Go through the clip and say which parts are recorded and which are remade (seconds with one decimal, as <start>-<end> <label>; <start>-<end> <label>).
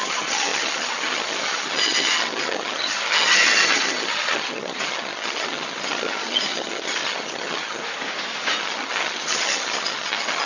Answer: 0.0-7.8 remade; 7.8-8.6 recorded; 8.6-10.4 remade